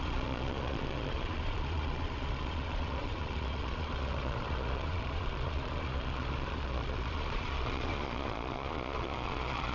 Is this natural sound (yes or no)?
no